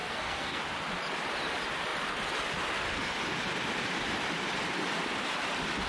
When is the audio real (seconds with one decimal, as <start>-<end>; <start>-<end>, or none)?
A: 0.6-5.9

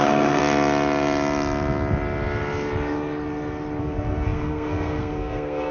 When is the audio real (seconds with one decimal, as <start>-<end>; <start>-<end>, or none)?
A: 0.4-3.8

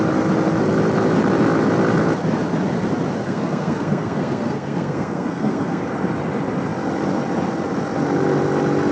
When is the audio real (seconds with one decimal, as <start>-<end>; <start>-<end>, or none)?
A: 0.0-3.2; 5.9-8.9